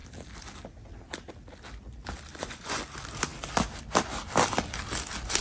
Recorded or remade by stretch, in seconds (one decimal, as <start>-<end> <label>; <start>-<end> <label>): 0.0-2.3 recorded; 2.3-2.8 remade; 2.8-5.4 recorded